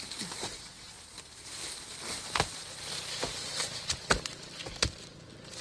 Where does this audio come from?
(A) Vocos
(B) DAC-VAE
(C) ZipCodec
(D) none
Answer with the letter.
D